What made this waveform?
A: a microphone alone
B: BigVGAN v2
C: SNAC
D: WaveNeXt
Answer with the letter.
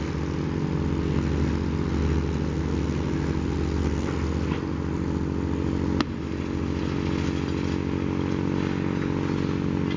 A